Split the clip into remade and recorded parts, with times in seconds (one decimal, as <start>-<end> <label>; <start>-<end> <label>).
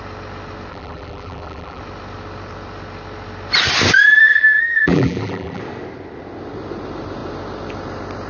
0.0-0.7 recorded; 0.7-1.8 remade; 1.8-4.3 recorded; 4.3-5.6 remade; 5.6-8.3 recorded